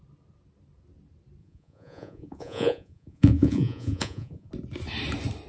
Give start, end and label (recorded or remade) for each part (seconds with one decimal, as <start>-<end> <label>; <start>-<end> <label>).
0.0-1.4 recorded; 1.4-4.5 remade; 4.5-5.5 recorded

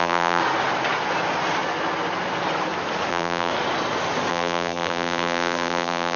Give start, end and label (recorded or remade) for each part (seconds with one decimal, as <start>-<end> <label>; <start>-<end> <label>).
0.0-0.4 remade; 0.4-3.1 recorded; 3.1-3.5 remade; 3.5-4.3 recorded; 4.3-6.2 remade